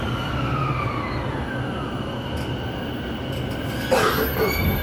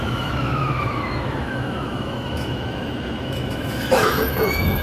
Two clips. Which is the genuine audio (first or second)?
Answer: first